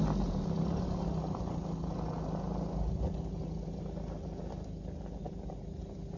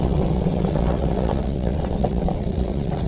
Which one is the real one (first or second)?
first